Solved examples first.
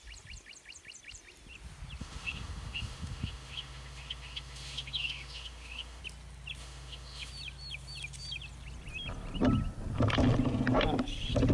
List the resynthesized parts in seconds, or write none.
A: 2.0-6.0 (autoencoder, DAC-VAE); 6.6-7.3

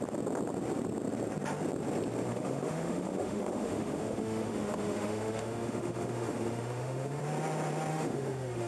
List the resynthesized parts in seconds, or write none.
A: 2.3-7.2 (autoencoder, DAC-VAE); 7.9-8.7

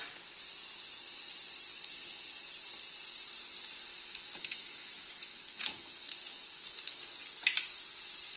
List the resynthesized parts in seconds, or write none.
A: 1.7-2.3 (autoencoder, DAC-VAE); 3.9-7.0